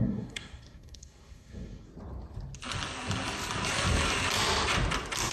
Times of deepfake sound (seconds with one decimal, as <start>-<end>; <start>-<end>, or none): 0.0-1.9